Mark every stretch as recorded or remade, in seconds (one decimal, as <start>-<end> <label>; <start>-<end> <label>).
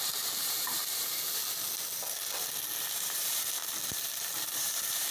0.0-1.4 remade; 1.4-2.9 recorded; 2.9-3.6 remade; 3.6-4.6 recorded; 4.6-5.1 remade